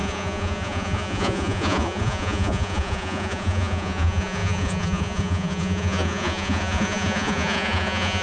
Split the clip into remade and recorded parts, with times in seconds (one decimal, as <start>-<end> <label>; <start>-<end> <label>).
0.0-8.2 remade

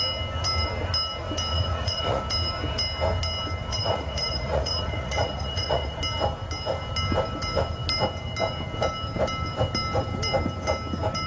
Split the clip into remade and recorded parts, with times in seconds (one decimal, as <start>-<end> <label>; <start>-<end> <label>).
0.0-1.5 recorded; 1.5-2.2 remade; 2.2-3.7 recorded; 3.7-6.0 remade; 6.0-11.3 recorded

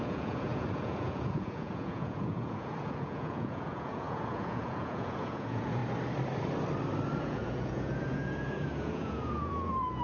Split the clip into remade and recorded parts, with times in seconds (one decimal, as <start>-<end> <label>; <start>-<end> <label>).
0.0-5.8 remade; 5.8-7.2 recorded; 7.2-10.0 remade

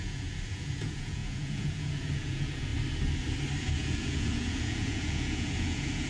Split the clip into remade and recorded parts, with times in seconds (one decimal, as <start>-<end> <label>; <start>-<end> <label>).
0.0-2.7 remade; 2.7-3.6 recorded; 3.6-6.1 remade

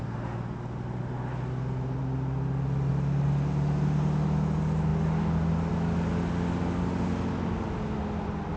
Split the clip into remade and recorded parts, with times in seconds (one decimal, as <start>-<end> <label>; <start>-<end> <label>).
0.0-8.6 recorded